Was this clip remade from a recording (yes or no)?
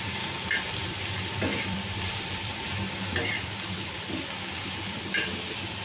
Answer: yes